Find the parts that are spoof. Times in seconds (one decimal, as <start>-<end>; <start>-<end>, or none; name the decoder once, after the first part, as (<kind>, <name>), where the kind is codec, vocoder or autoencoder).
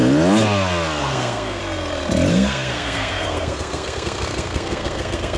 1.0-1.6 (codec, SNAC); 2.3-5.4